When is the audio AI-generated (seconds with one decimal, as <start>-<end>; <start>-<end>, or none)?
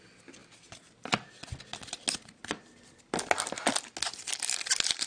none